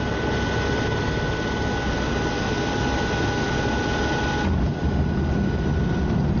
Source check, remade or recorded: recorded